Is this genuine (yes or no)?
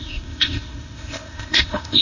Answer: no